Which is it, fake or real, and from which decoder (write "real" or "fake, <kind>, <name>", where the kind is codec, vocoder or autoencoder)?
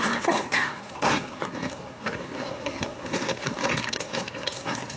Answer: fake, codec, SNAC